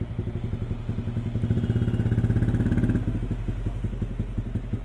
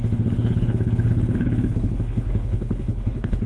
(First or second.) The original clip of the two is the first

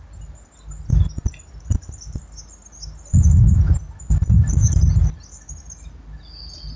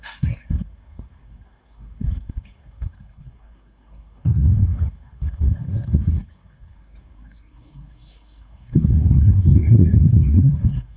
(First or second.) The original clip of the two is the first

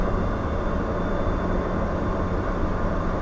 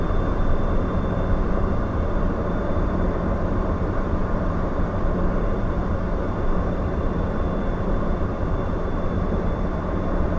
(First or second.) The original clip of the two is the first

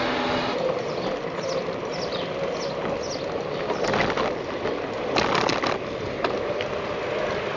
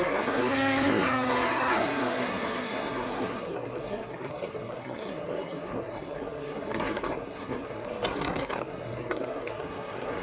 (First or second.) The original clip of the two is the first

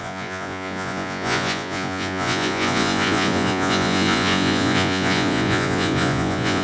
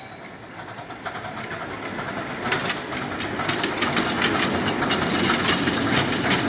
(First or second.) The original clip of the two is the second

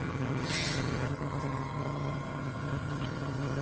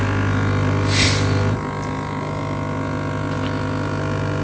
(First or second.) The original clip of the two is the second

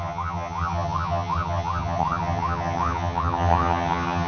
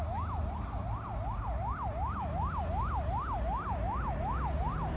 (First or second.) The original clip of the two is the second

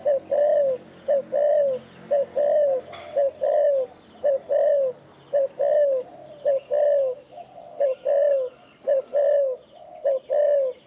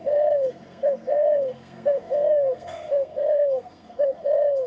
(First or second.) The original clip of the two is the first